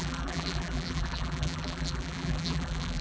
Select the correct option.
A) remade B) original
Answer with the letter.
A